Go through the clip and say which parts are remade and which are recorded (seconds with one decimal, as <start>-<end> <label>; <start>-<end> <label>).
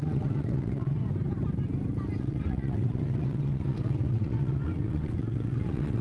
0.0-1.0 remade; 1.0-2.2 recorded; 2.2-6.0 remade